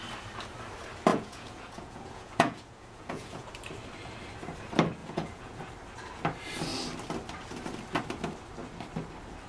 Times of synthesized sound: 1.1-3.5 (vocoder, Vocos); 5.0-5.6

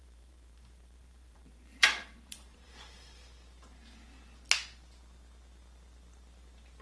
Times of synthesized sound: 0.0-2.7 (vocoder, BigVGAN v2)

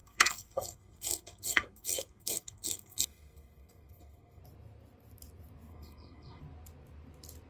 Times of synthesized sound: 0.0-4.4 (codec, SNAC); 5.7-6.4

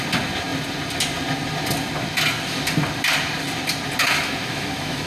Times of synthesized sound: 4.0-5.1 (autoencoder, DAC-VAE)